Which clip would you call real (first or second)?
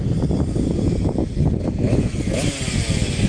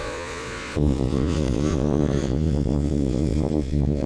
first